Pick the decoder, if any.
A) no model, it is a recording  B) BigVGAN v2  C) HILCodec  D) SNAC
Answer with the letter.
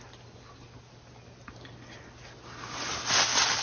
A